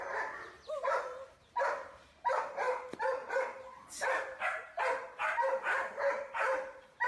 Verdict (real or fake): fake